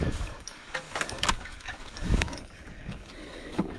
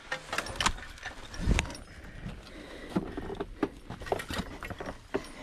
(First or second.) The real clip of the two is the second